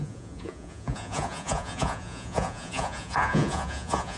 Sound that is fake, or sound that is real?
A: fake